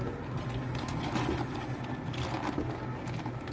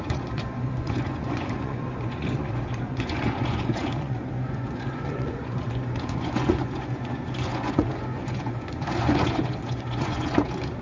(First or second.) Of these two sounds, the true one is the first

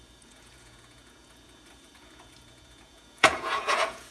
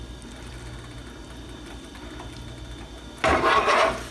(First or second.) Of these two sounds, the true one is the second